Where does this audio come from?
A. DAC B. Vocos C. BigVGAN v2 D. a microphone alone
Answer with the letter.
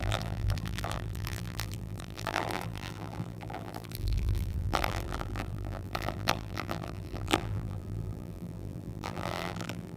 C